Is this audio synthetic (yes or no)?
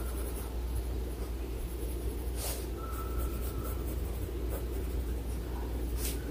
no